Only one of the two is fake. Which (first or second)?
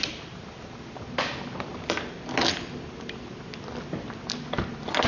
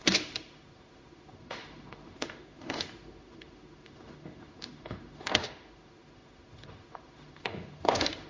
second